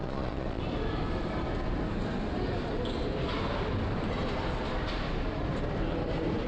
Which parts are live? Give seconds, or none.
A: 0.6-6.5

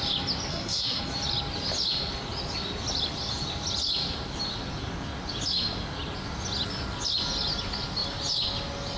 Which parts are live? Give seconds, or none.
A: 0.0-0.5; 1.0-9.0

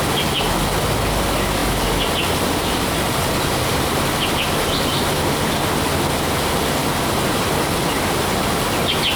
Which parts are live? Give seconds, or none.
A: 0.0-9.2

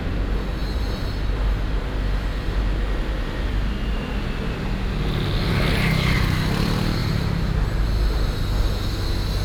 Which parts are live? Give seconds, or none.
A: 0.0-9.4

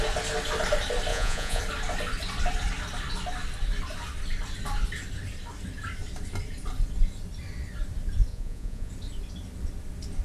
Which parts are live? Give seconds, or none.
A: 0.0-1.1; 1.6-8.3; 8.9-10.2

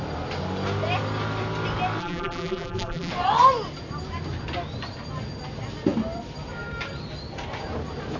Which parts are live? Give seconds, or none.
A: 0.0-2.0; 3.1-8.2

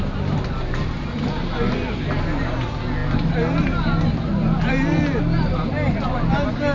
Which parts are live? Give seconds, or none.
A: 0.0-6.7